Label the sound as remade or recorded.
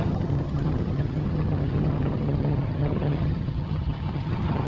remade